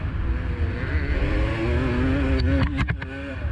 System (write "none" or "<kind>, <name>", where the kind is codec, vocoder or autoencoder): none